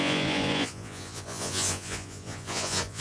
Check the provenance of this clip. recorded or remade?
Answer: remade